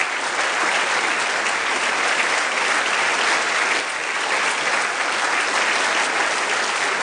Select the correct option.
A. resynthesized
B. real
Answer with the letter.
B